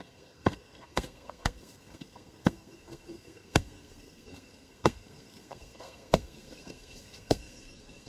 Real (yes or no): no